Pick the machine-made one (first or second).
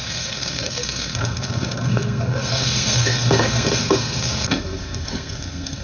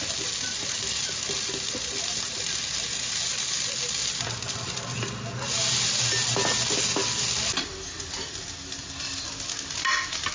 first